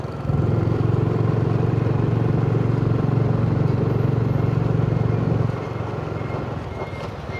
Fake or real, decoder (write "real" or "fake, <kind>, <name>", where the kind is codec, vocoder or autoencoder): real